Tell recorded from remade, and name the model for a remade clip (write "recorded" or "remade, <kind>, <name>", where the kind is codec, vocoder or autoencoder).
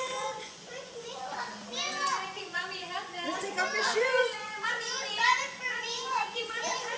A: remade, vocoder, Vocos